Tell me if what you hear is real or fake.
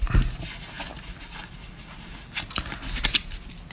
real